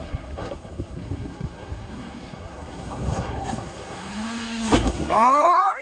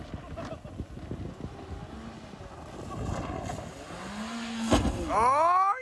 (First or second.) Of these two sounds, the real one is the second